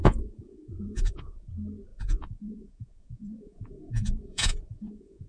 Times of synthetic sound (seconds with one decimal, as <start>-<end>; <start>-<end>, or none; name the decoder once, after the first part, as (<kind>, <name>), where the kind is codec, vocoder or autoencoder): 0.0-1.5 (vocoder, Vocos); 1.9-5.3